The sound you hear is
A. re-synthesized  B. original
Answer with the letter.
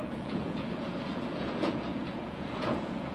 A